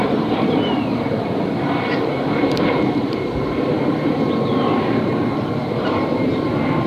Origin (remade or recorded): remade